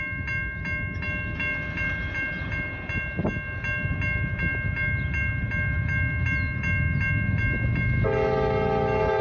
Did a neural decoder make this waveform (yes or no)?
no